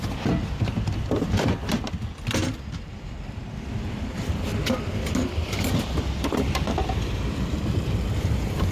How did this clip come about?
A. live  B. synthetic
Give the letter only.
B